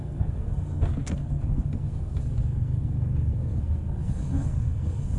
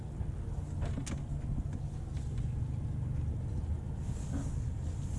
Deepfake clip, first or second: first